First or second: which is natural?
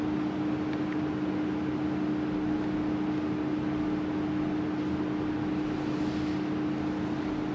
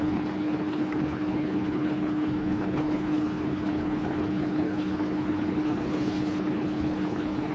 first